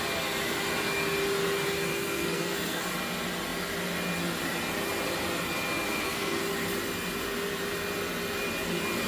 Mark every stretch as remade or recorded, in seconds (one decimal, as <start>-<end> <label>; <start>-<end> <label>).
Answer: 0.0-1.9 recorded; 1.9-2.8 remade; 2.8-5.9 recorded; 5.9-6.4 remade; 6.4-9.1 recorded